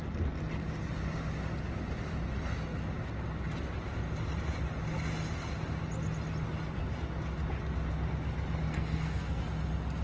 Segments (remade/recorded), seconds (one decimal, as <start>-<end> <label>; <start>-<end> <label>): 0.0-8.7 recorded; 8.7-9.4 remade; 9.4-10.0 recorded